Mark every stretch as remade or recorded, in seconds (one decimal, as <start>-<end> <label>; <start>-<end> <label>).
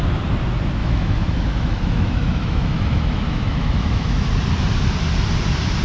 0.0-0.8 recorded; 0.8-4.3 remade; 4.3-5.8 recorded